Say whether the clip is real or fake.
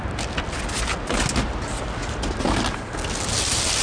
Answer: real